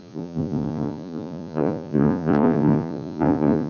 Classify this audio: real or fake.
fake